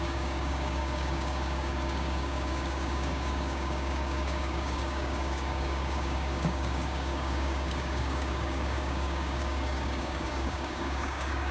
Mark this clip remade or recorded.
remade